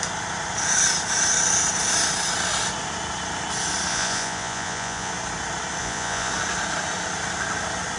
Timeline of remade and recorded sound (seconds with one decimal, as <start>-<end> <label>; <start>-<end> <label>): 0.0-3.9 recorded; 3.9-5.1 remade; 5.1-5.8 recorded; 5.8-6.3 remade; 6.3-8.0 recorded